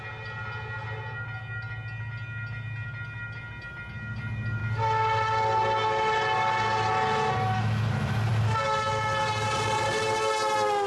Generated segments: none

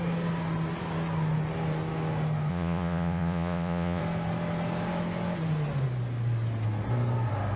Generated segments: 2.5-4.0 (vocoder, Vocos)

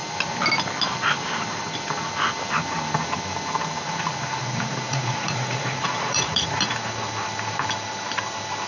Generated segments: 4.4-6.6 (vocoder, Vocos)

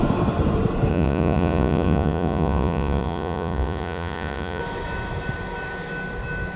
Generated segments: 0.9-4.6 (vocoder, Vocos)

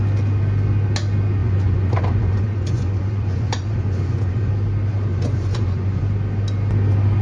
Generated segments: 1.4-4.5 (vocoder, Vocos); 5.1-6.0

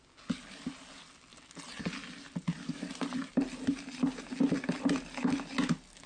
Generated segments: none

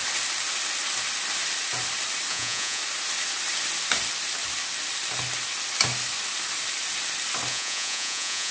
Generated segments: 2.3-2.8 (vocoder, Vocos); 7.5-8.5